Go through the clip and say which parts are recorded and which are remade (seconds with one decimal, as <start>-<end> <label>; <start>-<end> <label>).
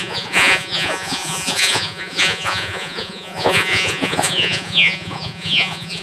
0.0-6.0 remade